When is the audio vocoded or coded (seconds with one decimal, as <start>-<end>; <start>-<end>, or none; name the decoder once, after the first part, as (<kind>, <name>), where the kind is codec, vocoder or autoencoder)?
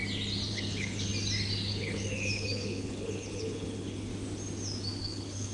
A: 0.5-1.1 (codec, HILCodec); 1.7-4.1; 5.0-5.5